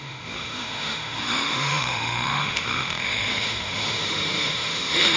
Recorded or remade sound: remade